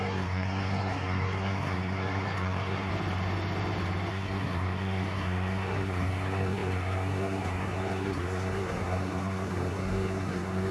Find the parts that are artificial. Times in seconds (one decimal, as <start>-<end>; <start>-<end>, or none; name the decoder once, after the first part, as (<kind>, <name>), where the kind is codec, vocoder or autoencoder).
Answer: 0.0-2.9 (codec, SNAC); 4.1-10.7